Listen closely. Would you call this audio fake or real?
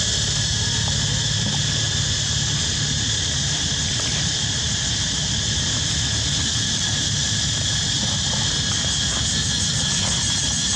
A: real